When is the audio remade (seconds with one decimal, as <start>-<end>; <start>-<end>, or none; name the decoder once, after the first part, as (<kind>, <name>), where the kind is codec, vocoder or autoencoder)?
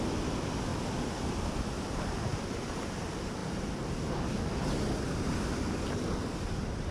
0.7-1.8 (vocoder, BigVGAN v2)